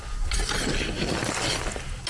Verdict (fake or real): real